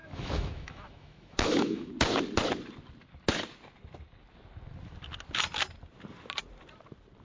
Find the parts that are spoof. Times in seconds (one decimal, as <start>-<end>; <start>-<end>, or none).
0.0-1.9